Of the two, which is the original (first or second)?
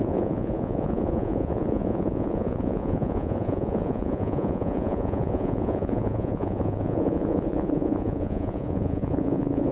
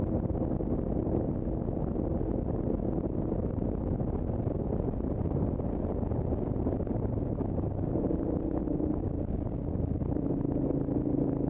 second